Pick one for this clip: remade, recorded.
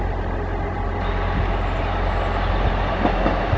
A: recorded